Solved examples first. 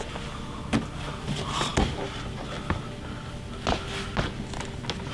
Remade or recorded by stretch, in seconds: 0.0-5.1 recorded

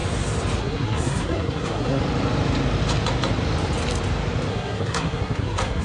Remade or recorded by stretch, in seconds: 0.0-0.6 recorded; 0.6-2.0 remade; 2.0-4.5 recorded; 4.5-5.8 remade

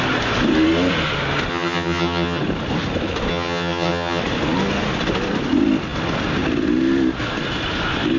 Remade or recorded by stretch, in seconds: 0.0-1.5 recorded; 1.5-2.4 remade; 2.4-3.3 recorded; 3.3-4.2 remade; 4.2-8.2 recorded

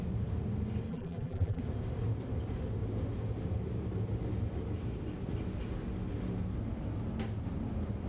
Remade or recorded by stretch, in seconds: 0.0-0.9 recorded; 0.9-1.6 remade; 1.6-8.1 recorded

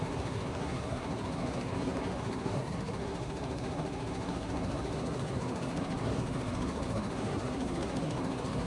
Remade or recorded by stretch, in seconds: 0.0-8.7 remade

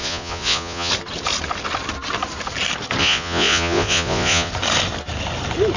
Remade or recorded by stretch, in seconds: 0.0-0.9 remade; 0.9-3.0 recorded; 3.0-4.5 remade; 4.5-5.8 recorded

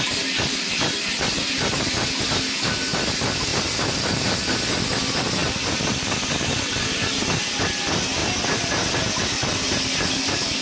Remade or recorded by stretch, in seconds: 0.0-10.6 recorded